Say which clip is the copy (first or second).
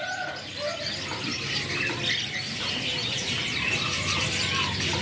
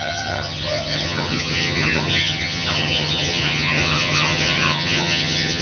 second